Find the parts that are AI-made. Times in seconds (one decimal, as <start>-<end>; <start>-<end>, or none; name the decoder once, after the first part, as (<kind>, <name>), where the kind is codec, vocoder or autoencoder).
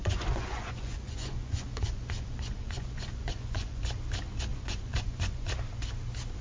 0.0-3.8 (vocoder, Vocos); 4.5-5.5